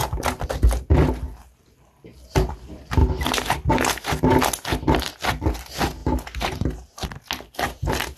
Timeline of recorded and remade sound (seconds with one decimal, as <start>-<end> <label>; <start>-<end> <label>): 0.0-8.2 recorded